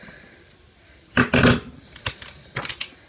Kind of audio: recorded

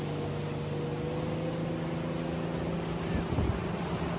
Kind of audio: recorded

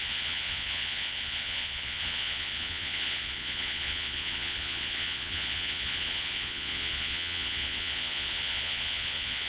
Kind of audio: remade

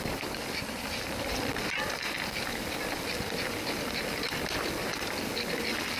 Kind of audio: recorded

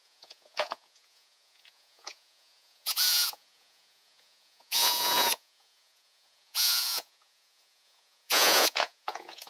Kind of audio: remade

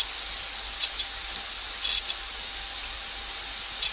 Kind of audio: recorded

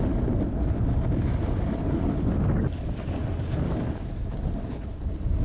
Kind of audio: recorded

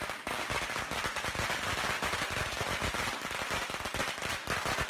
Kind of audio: recorded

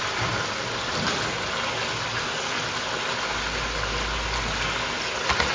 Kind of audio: recorded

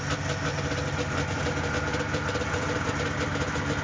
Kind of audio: recorded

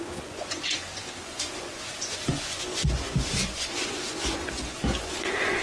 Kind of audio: remade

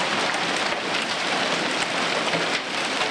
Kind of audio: recorded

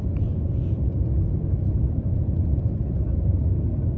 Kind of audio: recorded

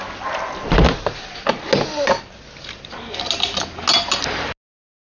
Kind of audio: recorded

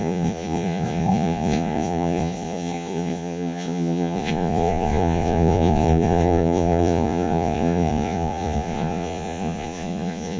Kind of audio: remade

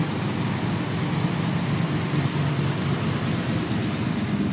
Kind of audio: recorded